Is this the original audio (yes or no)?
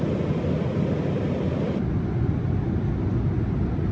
yes